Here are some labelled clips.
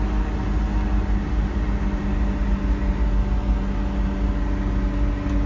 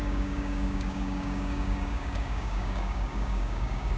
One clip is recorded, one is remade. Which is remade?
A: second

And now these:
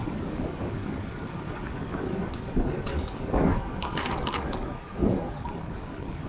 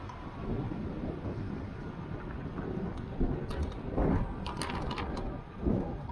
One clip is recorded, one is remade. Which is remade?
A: first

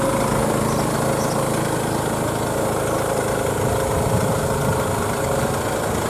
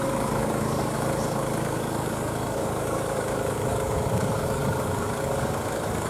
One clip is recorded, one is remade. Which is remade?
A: second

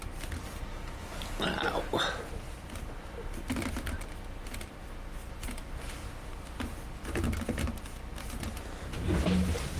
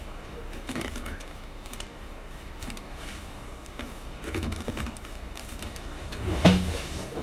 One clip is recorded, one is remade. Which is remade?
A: second